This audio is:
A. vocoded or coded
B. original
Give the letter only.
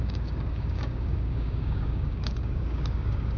A